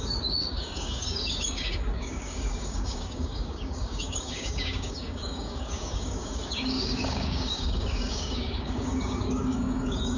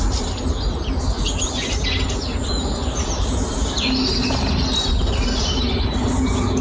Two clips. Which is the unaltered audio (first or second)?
second